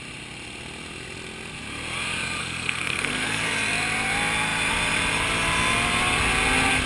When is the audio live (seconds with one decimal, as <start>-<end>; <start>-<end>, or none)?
0.0-2.4; 3.4-6.9